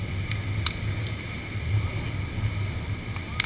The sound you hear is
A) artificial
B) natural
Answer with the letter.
B